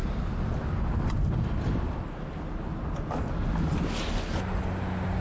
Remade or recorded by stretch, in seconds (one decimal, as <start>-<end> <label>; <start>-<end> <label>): 0.0-5.2 recorded